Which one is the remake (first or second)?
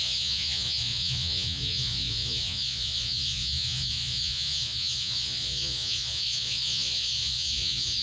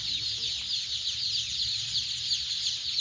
first